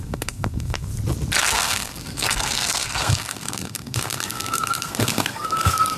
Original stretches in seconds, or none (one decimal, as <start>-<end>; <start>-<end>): 0.9-1.4